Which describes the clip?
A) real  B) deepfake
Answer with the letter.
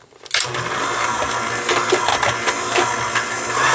A